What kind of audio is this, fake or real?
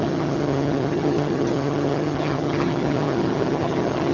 fake